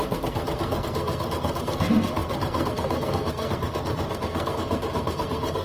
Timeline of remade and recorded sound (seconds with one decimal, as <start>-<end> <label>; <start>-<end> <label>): 0.0-5.6 remade